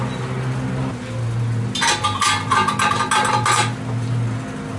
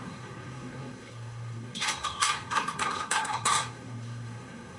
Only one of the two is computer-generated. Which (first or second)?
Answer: second